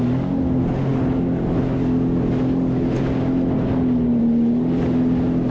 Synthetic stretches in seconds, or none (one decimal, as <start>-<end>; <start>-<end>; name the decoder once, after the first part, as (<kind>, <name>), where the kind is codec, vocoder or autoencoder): none